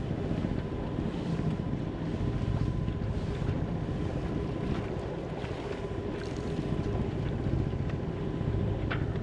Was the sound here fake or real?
real